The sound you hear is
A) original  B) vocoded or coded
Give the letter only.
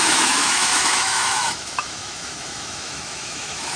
B